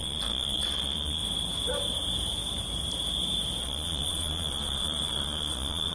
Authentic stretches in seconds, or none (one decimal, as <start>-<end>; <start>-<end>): 1.2-3.6